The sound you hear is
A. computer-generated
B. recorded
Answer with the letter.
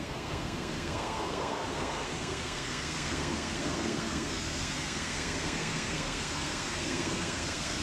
A